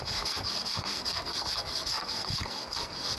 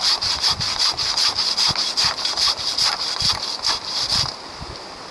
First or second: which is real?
second